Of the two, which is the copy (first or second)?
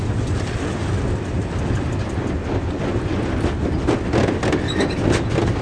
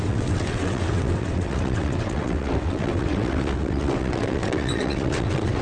second